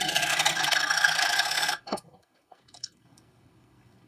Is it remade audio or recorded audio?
remade